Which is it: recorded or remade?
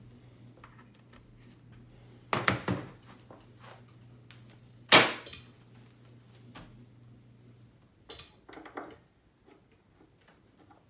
recorded